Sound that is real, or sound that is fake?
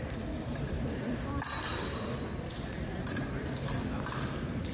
fake